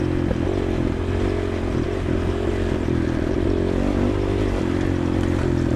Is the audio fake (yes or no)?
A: no